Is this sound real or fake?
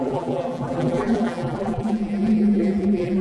fake